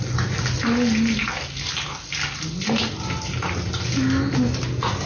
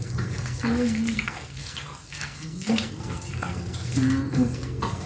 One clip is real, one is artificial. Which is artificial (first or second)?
second